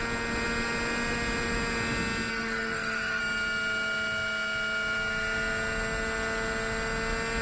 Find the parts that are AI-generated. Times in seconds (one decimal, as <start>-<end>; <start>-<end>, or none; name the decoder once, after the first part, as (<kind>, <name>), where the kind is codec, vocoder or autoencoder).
2.3-3.2 (codec, SNAC)